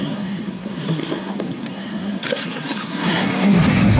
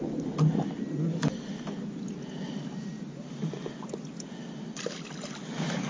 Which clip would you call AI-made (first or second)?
first